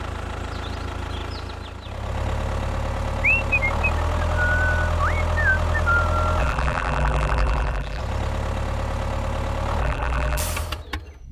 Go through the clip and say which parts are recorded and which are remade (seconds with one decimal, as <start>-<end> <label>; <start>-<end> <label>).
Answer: 0.0-6.4 recorded; 6.4-8.0 remade; 8.0-9.8 recorded; 9.8-10.4 remade; 10.4-11.3 recorded